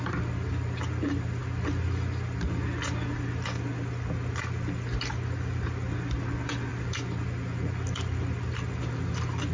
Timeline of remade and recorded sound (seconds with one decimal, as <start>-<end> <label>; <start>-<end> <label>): 0.0-9.5 recorded